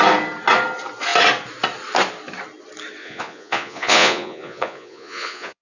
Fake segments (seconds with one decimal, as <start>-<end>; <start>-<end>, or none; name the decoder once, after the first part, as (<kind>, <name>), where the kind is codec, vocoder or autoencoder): 3.0-5.6 (vocoder, Vocos)